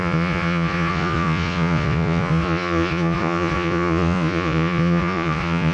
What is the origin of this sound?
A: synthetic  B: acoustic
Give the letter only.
A